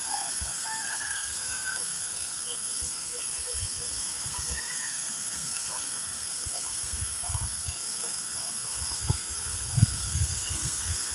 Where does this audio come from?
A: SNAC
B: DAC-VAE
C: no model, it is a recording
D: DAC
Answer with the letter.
A